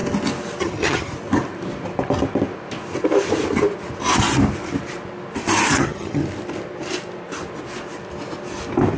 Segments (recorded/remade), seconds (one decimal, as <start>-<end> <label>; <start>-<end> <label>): 0.0-0.6 recorded; 0.6-1.1 remade; 1.1-5.7 recorded; 5.7-6.2 remade; 6.2-9.0 recorded